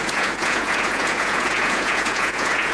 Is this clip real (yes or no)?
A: no